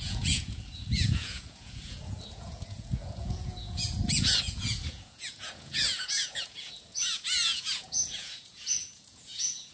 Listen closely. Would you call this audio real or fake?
fake